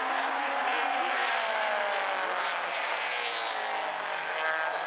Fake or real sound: real